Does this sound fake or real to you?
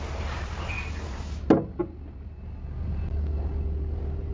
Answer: real